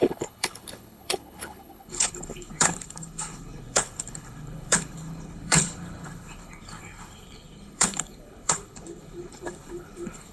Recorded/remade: remade